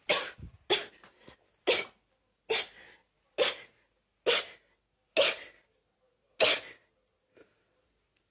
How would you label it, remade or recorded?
recorded